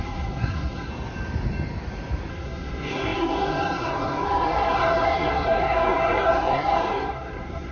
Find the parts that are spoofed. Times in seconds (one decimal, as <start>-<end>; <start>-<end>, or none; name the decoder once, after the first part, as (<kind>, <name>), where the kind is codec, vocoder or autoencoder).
0.0-0.9 (codec, SNAC); 2.3-7.7